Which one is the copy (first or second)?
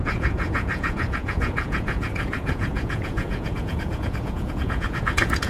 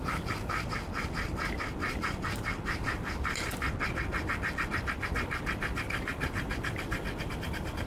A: first